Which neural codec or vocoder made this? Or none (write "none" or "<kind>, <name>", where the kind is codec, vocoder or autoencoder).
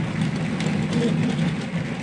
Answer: none